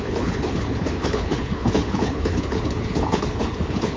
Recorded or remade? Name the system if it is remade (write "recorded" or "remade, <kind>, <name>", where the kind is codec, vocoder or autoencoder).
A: remade, codec, HILCodec